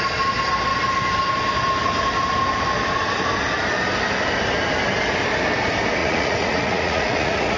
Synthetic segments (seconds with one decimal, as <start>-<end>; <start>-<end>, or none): 6.0-7.6